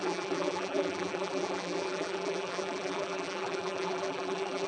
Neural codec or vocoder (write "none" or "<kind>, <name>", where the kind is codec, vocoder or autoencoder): vocoder, BigVGAN v2